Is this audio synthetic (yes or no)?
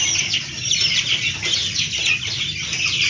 no